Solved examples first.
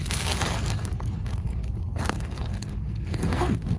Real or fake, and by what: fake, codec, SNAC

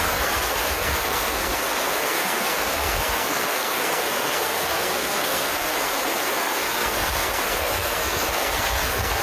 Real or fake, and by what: fake, codec, SNAC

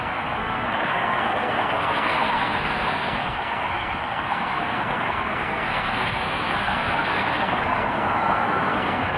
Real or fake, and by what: fake, codec, SNAC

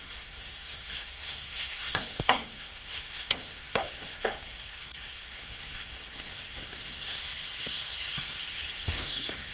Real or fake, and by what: fake, codec, SNAC